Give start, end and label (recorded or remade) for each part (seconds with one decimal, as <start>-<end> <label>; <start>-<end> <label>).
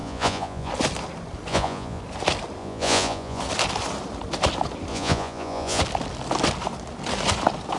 0.0-0.7 remade; 0.7-1.5 recorded; 1.5-2.0 remade; 2.0-2.6 recorded; 2.6-3.4 remade; 3.4-4.9 recorded; 4.9-5.8 remade; 5.8-7.8 recorded